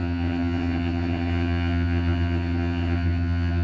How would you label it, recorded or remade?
remade